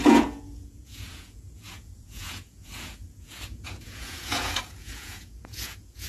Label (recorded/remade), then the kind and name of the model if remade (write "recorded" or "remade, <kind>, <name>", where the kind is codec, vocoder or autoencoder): remade, vocoder, Vocos